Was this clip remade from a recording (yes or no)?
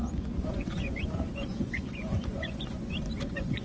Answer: yes